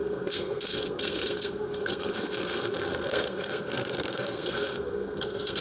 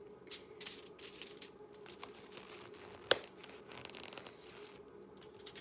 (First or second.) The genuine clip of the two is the second